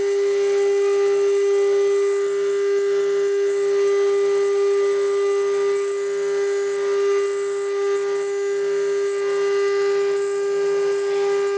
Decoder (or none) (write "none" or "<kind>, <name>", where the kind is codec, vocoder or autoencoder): none